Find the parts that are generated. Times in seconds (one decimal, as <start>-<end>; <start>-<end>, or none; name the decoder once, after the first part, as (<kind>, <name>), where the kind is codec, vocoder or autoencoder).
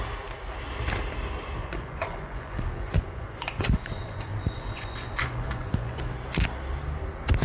1.6-6.0 (vocoder, Vocos)